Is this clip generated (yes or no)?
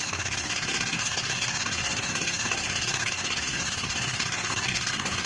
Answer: yes